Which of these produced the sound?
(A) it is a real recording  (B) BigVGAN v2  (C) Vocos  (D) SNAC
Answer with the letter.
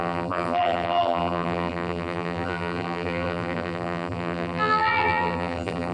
B